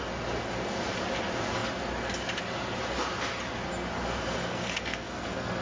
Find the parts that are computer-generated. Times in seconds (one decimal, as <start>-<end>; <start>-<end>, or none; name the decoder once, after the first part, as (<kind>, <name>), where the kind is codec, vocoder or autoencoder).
4.4-5.6 (codec, SNAC)